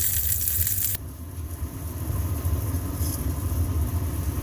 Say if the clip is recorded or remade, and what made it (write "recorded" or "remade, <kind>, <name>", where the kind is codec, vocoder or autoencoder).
remade, vocoder, BigVGAN v2